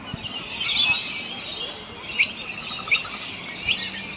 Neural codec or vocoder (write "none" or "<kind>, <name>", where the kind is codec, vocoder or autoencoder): none